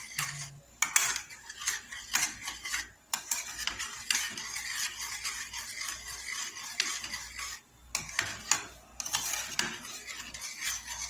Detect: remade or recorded recorded